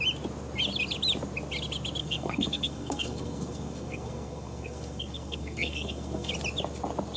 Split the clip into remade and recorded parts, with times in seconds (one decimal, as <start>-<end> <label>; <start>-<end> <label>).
0.0-2.0 recorded; 2.0-6.3 remade; 6.3-7.2 recorded